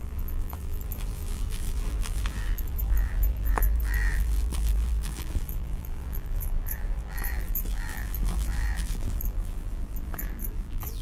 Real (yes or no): no